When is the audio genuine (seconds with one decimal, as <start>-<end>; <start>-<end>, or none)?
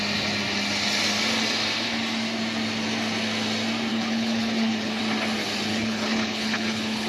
0.0-3.9; 5.0-5.7